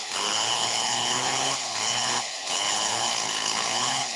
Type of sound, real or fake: fake